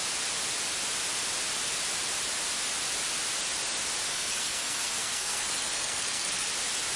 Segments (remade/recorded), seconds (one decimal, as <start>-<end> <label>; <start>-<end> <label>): 0.0-4.1 recorded; 4.1-6.5 remade; 6.5-7.0 recorded